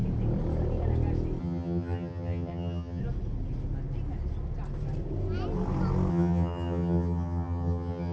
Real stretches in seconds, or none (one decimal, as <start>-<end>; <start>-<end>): 0.0-1.4; 3.0-6.1